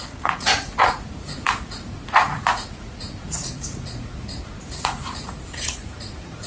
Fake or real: fake